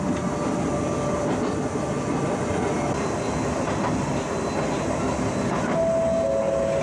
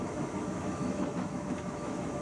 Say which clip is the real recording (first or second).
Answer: first